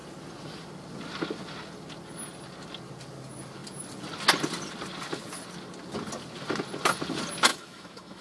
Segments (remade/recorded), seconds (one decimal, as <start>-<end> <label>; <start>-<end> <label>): 0.0-7.5 recorded; 7.5-8.2 remade